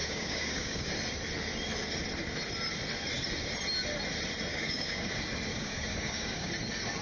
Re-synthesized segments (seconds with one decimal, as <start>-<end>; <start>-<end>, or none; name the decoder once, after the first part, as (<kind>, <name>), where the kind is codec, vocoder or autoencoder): 0.0-0.9 (codec, DAC); 4.5-5.1; 5.5-6.5